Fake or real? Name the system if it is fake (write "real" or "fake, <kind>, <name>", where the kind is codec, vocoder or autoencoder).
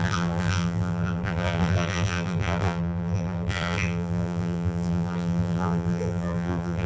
fake, vocoder, BigVGAN v2